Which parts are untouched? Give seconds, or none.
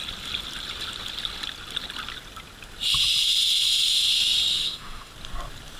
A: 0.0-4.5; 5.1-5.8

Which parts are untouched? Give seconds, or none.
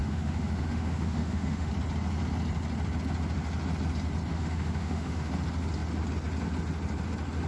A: 1.7-4.3; 5.3-7.5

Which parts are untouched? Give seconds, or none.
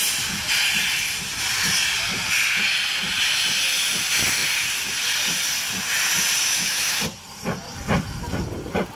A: 0.0-6.5; 7.0-9.0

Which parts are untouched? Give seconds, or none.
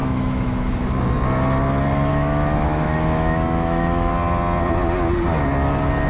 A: 0.8-2.1; 4.1-6.1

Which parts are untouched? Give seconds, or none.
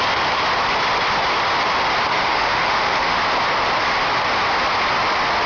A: 0.0-2.1; 3.2-5.5